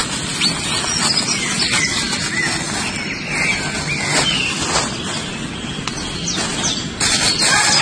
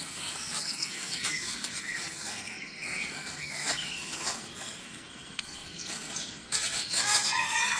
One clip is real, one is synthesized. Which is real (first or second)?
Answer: first